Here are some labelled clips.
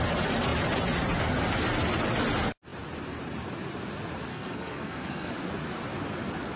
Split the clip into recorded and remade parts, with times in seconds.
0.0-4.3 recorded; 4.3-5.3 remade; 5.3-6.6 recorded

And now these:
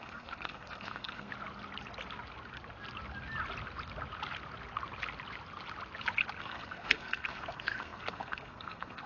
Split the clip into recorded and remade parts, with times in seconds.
0.0-1.3 remade; 1.3-6.4 recorded; 6.4-9.1 remade

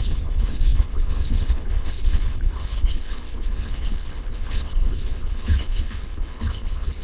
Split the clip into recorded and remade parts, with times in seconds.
0.0-7.0 remade

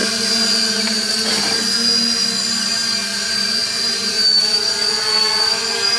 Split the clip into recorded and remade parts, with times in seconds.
0.0-6.0 recorded

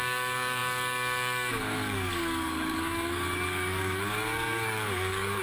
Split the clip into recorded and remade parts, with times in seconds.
0.0-5.4 remade

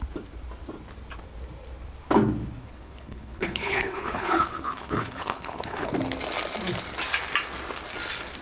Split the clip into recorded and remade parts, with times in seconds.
0.0-2.6 recorded; 2.6-5.9 remade; 5.9-8.4 recorded